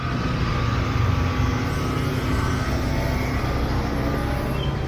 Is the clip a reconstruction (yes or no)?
no